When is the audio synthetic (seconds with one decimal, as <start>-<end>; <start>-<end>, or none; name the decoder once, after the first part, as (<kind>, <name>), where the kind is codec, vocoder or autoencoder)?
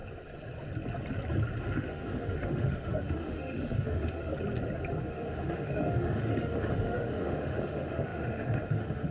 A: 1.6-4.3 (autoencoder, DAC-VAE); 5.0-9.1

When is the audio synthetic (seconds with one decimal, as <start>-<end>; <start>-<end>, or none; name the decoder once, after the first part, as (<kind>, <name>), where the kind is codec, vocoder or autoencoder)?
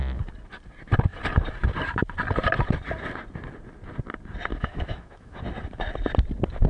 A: 4.5-5.4 (autoencoder, DAC-VAE)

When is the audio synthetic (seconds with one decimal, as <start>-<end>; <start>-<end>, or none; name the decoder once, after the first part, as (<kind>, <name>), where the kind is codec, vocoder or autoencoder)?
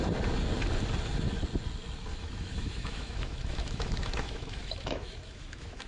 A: 2.1-5.9 (autoencoder, DAC-VAE)